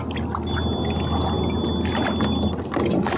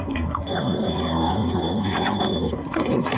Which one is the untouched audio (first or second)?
first